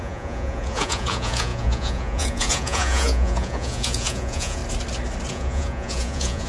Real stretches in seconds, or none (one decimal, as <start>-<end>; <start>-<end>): 4.6-5.3